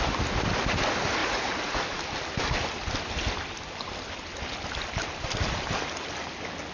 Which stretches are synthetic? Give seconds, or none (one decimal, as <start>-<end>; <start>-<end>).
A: 1.2-1.8